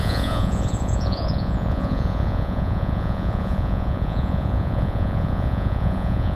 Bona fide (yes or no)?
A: no